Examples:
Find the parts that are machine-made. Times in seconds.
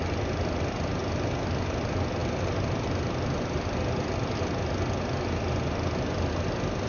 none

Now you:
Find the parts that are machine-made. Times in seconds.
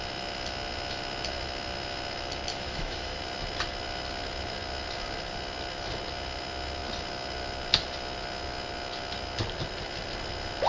2.5-3.2 (autoencoder, DAC-VAE)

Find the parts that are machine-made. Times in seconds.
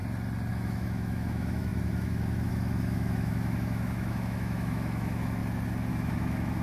0.5-5.4 (autoencoder, DAC-VAE); 5.9-6.6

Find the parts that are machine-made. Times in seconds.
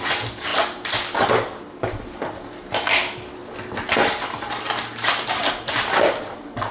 none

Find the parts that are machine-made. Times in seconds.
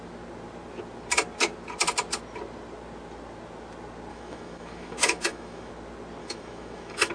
4.1-5.7 (autoencoder, DAC-VAE); 6.2-7.1